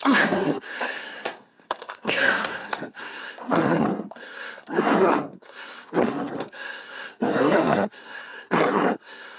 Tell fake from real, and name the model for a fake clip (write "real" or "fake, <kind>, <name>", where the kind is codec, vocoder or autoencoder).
fake, codec, SNAC